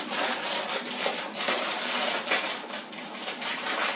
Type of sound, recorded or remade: recorded